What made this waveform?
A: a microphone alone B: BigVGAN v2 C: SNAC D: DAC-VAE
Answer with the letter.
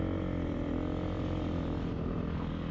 A